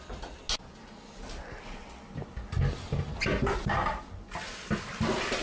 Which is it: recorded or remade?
recorded